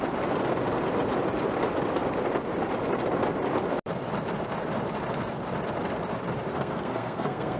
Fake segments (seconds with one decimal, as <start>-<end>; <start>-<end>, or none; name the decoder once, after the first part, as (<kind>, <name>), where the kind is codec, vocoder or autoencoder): 6.5-7.6 (codec, SNAC)